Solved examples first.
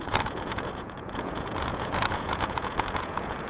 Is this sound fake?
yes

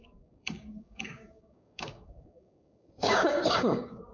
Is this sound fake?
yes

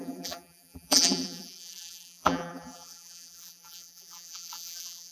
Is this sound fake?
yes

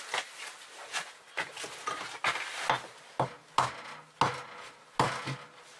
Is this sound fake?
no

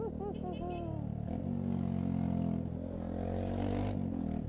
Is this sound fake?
no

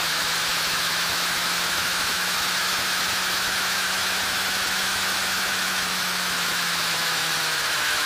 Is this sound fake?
yes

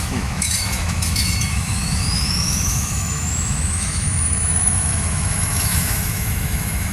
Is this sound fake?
yes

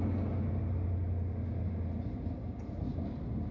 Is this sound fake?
no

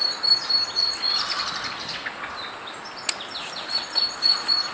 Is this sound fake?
no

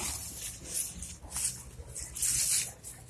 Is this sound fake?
no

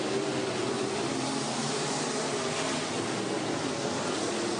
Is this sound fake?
no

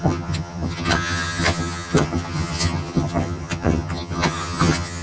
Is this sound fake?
yes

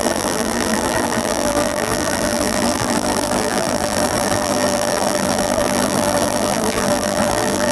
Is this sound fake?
yes